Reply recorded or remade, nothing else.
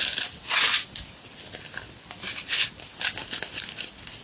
recorded